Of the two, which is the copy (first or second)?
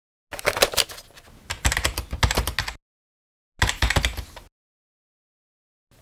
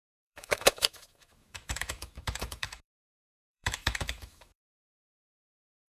second